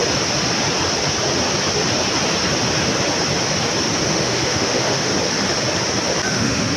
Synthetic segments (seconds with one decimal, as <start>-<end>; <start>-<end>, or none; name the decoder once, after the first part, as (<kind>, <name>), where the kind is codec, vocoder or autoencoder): 4.1-5.1 (autoencoder, DAC-VAE); 6.3-6.8